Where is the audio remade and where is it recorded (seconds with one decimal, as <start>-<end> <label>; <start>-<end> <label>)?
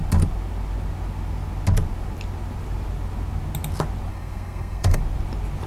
0.0-4.1 recorded; 4.1-5.0 remade; 5.0-5.7 recorded